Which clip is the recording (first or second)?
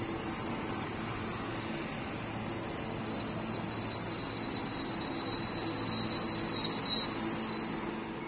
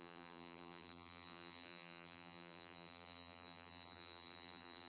first